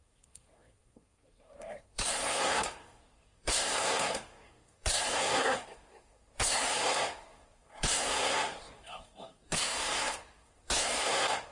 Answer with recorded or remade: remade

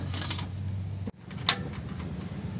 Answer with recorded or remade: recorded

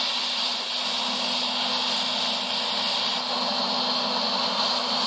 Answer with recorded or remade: recorded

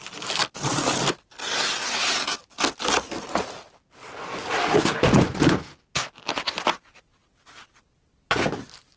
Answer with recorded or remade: recorded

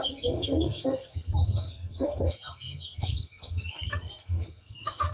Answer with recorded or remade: remade